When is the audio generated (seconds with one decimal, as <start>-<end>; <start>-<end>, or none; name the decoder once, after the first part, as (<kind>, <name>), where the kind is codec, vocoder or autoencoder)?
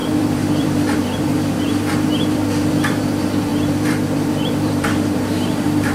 0.0-5.9 (vocoder, BigVGAN v2)